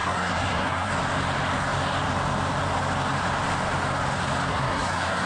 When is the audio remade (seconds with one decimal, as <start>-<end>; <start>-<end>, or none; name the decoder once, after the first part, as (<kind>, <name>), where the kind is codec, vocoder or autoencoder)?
0.0-0.9 (codec, SNAC); 4.5-5.3